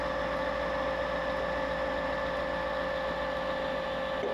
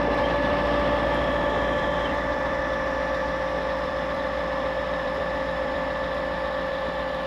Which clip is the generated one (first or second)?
second